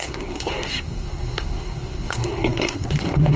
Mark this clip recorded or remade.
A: remade